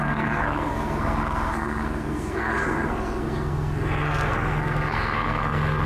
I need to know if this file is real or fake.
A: fake